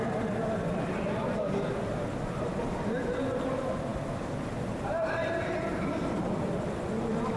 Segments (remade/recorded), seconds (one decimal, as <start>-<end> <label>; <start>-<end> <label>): 0.0-3.9 recorded; 3.9-7.4 remade